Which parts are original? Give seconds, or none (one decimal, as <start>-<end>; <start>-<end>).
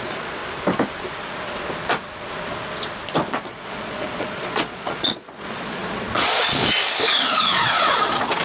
0.4-3.3; 6.6-7.2